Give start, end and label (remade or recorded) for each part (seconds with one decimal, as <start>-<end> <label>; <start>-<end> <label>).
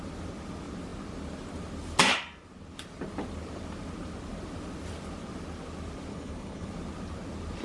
0.0-6.1 recorded; 6.1-6.7 remade; 6.7-7.6 recorded